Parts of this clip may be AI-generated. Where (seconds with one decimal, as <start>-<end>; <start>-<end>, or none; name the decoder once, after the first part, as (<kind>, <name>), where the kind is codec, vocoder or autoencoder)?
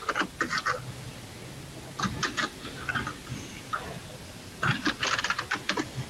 none